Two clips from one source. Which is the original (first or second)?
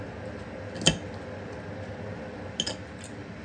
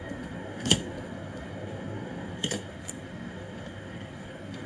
first